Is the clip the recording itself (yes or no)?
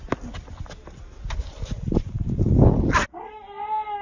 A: yes